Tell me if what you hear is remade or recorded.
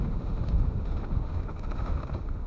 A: remade